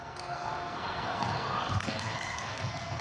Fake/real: fake